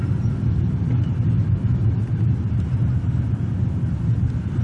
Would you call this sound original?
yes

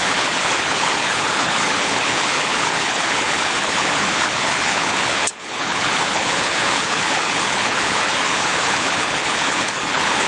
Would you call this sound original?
no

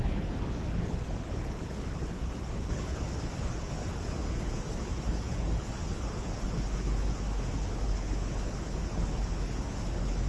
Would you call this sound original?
no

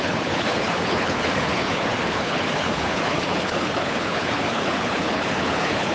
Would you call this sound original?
no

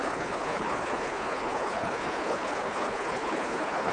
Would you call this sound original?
no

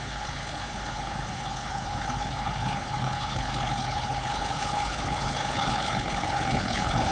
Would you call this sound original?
no